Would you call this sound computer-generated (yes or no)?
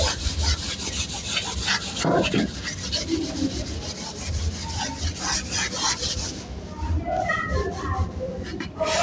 no